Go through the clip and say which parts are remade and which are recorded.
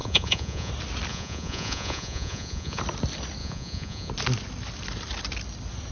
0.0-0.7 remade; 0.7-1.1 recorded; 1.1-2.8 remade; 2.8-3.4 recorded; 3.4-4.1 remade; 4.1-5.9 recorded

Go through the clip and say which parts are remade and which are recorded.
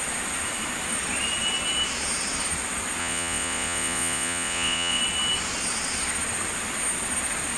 0.0-3.0 recorded; 3.0-5.0 remade; 5.0-7.6 recorded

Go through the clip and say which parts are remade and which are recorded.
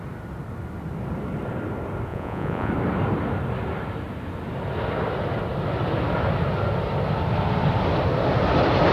0.0-2.1 recorded; 2.1-2.7 remade; 2.7-8.9 recorded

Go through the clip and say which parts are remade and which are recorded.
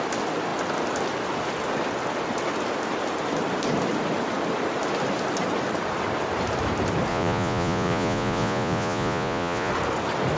0.0-7.1 recorded; 7.1-9.7 remade; 9.7-10.4 recorded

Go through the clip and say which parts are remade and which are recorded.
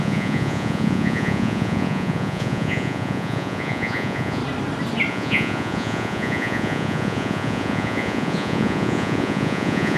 0.0-4.4 remade; 4.4-5.1 recorded; 5.1-10.0 remade